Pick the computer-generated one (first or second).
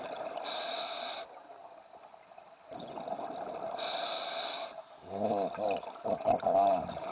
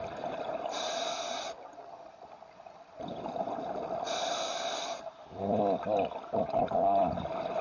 second